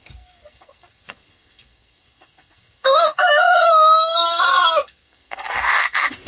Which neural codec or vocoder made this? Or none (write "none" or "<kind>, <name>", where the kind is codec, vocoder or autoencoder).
codec, SNAC